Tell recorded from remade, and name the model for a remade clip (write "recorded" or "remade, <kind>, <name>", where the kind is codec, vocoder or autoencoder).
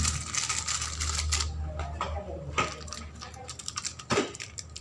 recorded